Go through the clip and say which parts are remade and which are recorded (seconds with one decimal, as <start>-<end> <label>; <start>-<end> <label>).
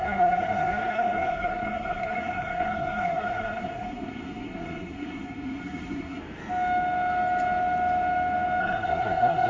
0.0-6.2 remade; 6.2-8.6 recorded; 8.6-9.5 remade